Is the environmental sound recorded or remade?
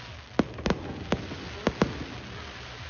recorded